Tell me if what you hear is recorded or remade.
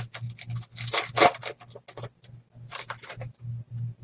recorded